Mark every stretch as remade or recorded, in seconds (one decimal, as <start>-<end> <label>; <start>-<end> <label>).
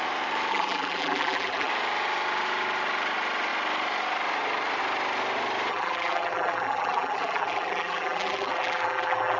0.0-0.5 recorded; 0.5-1.7 remade; 1.7-5.7 recorded; 5.7-9.4 remade